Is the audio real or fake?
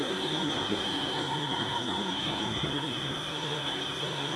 fake